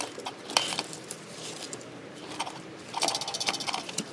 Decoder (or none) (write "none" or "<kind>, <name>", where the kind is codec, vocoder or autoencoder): none